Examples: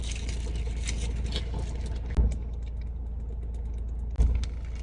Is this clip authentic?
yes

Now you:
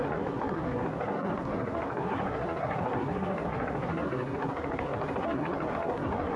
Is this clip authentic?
no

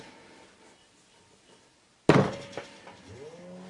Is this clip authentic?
yes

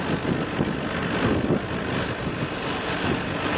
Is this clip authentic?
yes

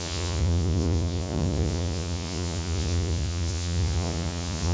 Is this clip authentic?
no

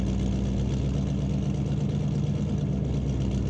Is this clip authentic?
yes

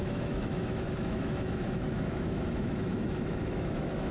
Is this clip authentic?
no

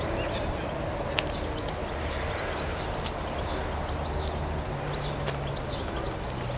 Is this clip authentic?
yes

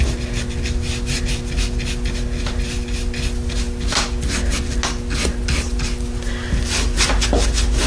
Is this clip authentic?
yes